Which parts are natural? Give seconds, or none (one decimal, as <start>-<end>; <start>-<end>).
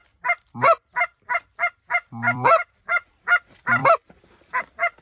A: 0.0-1.7